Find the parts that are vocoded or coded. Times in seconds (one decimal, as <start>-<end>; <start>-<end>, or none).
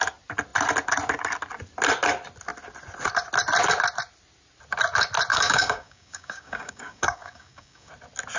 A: 5.3-7.9